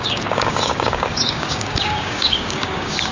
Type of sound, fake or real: fake